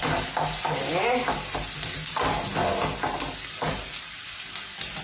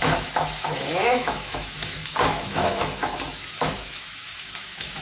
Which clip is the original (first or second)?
first